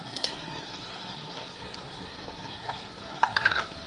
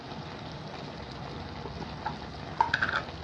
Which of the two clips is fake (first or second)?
first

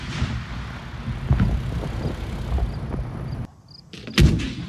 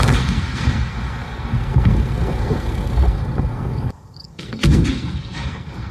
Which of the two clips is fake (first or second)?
second